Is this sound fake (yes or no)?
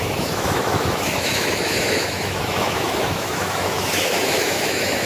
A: yes